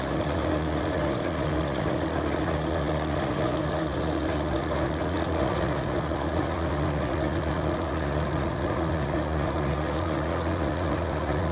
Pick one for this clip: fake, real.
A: fake